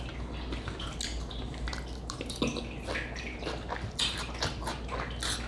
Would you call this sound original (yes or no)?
yes